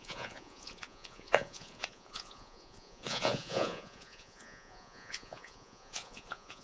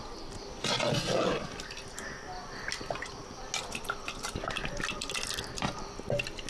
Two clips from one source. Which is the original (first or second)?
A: second